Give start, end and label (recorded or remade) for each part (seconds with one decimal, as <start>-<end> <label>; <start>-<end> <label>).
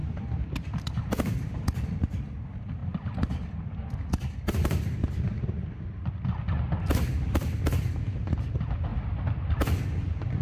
0.0-0.7 remade; 0.7-10.4 recorded